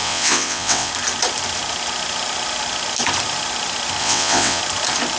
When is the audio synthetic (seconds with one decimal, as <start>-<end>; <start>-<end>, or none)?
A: 0.0-0.9; 4.0-4.6